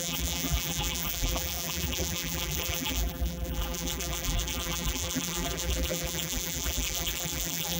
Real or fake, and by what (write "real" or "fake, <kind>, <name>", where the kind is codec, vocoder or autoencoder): fake, vocoder, BigVGAN v2